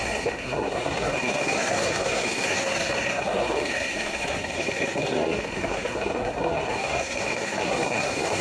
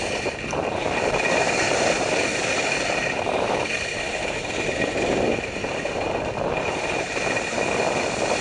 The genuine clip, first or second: second